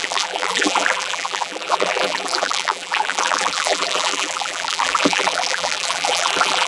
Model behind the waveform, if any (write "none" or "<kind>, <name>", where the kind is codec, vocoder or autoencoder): vocoder, BigVGAN v2